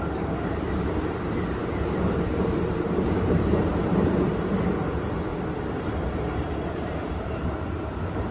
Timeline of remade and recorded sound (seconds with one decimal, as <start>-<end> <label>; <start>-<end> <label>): 0.0-5.3 remade; 5.3-6.7 recorded; 6.7-8.3 remade